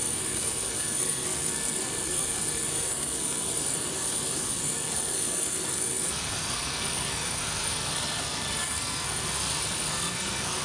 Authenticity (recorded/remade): remade